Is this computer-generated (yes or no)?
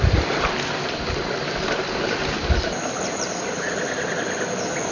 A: no